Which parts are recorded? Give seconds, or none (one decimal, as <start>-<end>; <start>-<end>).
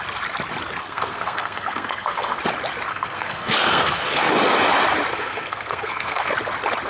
0.0-0.8; 2.4-2.9; 4.3-5.1; 6.3-6.9